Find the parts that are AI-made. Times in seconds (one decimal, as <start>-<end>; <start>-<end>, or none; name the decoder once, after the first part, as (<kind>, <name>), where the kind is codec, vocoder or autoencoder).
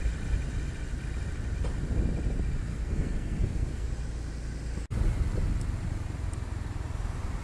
2.7-3.9 (codec, SNAC)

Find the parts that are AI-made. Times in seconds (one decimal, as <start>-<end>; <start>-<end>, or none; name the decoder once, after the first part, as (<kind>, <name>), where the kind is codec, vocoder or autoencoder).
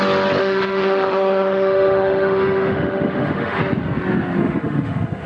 0.4-3.6 (autoencoder, DAC-VAE); 4.4-5.3